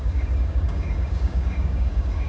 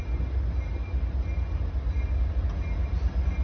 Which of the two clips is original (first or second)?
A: second